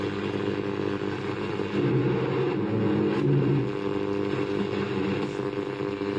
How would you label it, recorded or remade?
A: recorded